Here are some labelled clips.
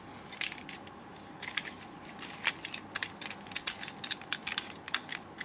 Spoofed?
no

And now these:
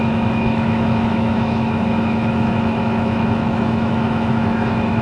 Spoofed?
yes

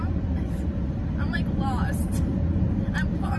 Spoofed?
no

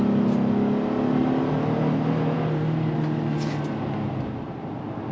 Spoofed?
no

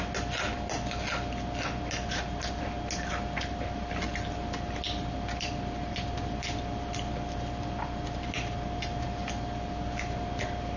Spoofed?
no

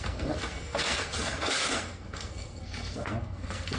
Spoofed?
yes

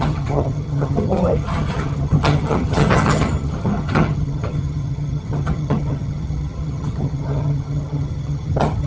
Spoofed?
yes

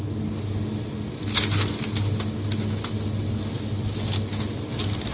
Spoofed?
no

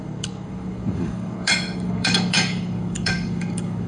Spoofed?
yes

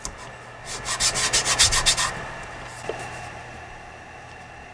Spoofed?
no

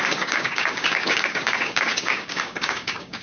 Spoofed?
yes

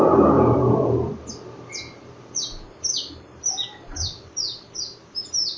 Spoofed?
yes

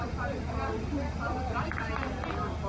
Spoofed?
no